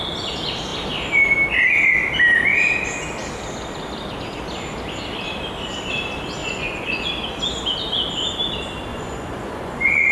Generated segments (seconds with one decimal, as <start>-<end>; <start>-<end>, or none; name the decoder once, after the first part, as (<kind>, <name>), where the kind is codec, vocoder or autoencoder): 6.4-7.1 (vocoder, Vocos); 8.9-10.1